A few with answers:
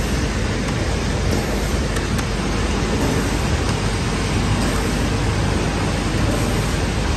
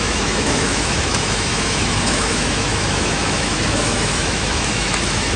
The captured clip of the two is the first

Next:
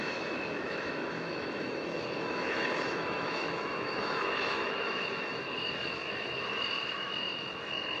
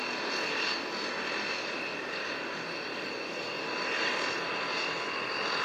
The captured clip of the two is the second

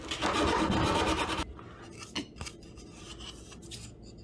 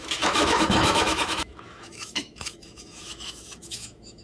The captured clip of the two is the first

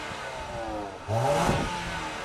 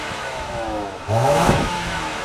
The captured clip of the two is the first